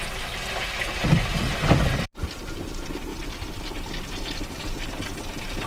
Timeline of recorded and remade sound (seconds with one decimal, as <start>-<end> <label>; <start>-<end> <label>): 0.0-5.7 recorded